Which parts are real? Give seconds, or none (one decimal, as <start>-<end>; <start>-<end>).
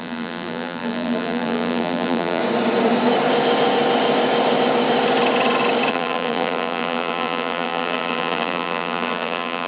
2.4-5.9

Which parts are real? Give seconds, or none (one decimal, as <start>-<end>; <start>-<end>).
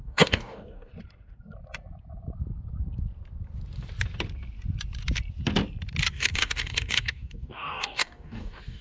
0.9-6.1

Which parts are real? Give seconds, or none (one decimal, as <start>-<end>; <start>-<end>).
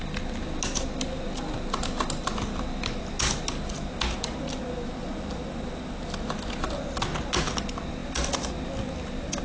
0.0-9.4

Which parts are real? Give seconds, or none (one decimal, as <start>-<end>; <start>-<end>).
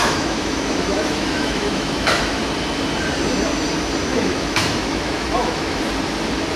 2.4-4.1; 5.8-6.6